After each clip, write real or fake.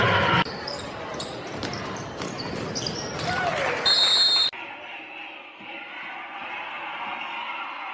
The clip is real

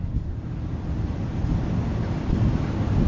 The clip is real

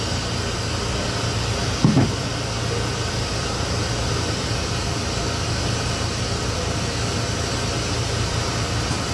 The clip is real